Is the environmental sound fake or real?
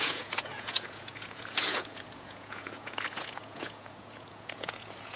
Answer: fake